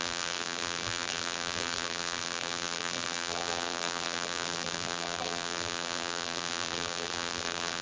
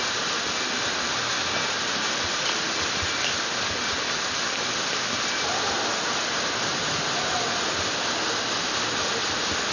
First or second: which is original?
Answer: second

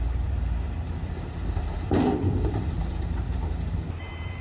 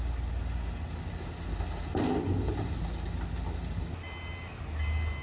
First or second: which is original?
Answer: second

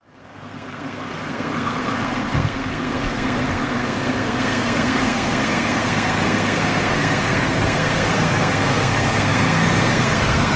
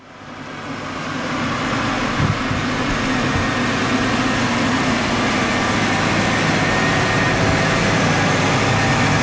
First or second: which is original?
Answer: second